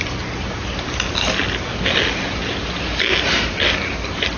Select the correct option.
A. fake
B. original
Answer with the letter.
B